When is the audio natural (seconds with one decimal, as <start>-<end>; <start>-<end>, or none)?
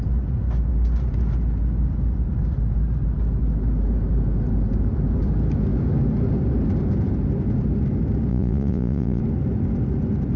0.0-8.3; 9.2-10.4